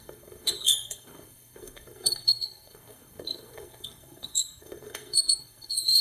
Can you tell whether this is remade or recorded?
remade